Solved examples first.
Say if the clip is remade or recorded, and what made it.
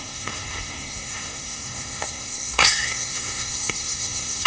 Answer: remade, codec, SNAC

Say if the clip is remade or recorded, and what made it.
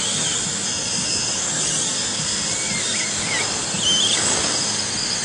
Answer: recorded